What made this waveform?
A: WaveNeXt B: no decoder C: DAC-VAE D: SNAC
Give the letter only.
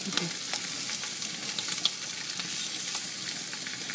B